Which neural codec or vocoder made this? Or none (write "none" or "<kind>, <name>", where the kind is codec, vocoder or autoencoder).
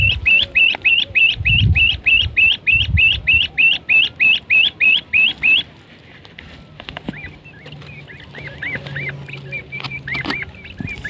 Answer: none